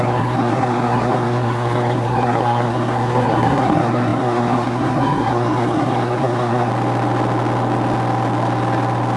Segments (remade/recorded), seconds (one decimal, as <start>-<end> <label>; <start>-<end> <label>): 0.0-6.7 remade; 6.7-9.2 recorded